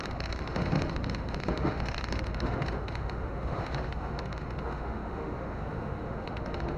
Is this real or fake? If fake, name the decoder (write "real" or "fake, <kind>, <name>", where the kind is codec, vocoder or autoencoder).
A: fake, autoencoder, DAC-VAE